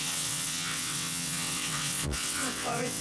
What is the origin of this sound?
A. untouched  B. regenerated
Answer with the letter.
B